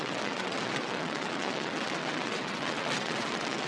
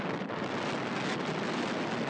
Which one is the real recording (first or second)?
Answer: second